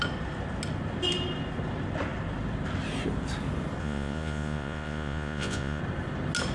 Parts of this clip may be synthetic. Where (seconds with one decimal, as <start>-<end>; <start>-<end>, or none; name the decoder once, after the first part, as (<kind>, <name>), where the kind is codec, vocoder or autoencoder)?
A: 3.8-5.8 (vocoder, Vocos)